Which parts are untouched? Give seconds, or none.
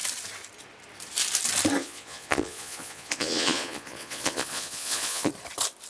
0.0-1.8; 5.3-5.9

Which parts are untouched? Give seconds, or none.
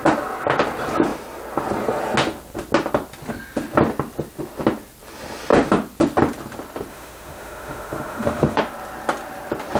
0.0-6.9; 8.6-9.8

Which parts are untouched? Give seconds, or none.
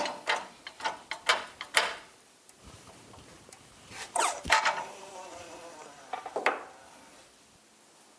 0.0-1.3; 6.2-8.2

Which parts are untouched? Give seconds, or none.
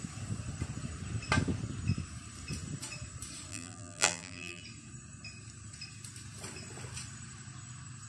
0.0-3.5; 4.6-8.1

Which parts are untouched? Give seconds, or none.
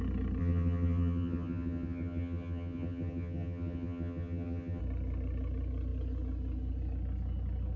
0.0-0.4; 4.8-7.8